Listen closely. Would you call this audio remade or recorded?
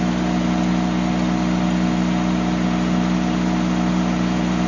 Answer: recorded